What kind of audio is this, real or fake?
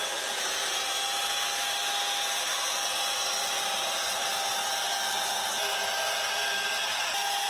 real